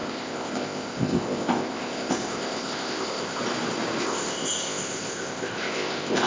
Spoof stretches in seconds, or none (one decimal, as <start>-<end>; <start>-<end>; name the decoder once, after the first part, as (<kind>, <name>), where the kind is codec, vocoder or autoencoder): 0.0-3.4 (codec, ZipCodec); 4.0-6.3